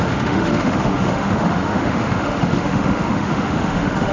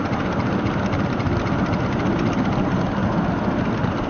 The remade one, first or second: first